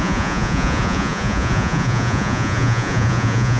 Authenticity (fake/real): fake